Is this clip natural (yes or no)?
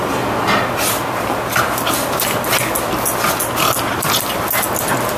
yes